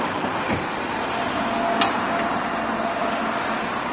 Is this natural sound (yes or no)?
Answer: yes